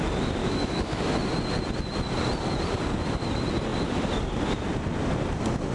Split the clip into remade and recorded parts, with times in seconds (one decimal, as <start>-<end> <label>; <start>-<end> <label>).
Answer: 0.0-0.4 recorded; 0.4-1.0 remade; 1.0-5.7 recorded